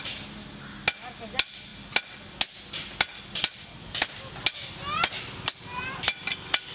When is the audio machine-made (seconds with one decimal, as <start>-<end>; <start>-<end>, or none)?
none